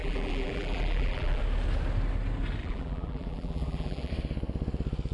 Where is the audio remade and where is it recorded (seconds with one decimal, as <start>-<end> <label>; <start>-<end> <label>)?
0.0-1.4 remade; 1.4-2.6 recorded; 2.6-4.1 remade; 4.1-5.1 recorded